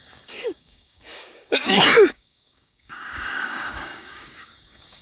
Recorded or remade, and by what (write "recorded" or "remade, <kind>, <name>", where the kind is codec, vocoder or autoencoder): remade, codec, DAC